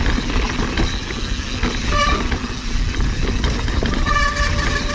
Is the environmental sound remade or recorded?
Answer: recorded